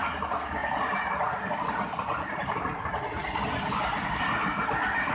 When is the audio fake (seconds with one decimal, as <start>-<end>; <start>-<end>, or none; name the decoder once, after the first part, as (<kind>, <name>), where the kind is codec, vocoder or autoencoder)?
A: 0.6-2.6 (vocoder, BigVGAN v2)